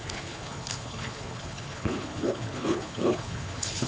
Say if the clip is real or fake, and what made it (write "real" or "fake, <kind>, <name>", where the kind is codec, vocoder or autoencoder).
fake, codec, HILCodec